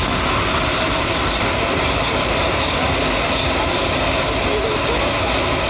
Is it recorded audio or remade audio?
recorded